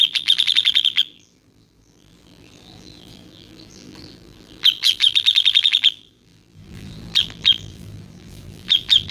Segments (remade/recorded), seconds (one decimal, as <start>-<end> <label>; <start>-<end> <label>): 0.0-9.1 remade